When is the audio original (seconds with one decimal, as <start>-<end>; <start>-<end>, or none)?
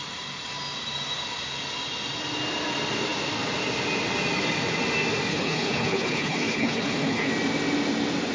0.0-5.3; 7.3-8.3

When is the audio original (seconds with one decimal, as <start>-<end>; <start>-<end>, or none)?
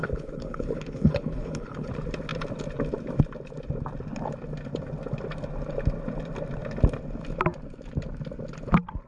1.9-9.1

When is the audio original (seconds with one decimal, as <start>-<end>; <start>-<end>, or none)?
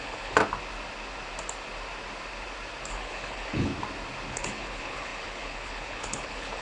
0.4-2.9; 3.7-4.3